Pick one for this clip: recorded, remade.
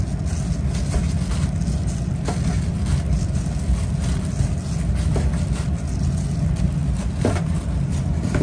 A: recorded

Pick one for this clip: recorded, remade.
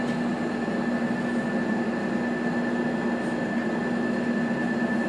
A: recorded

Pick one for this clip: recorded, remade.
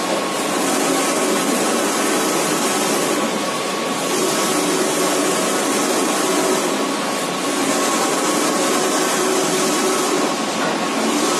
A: recorded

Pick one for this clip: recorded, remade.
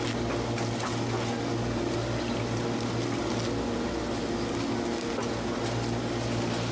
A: recorded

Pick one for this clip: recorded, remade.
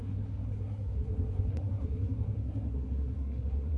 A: remade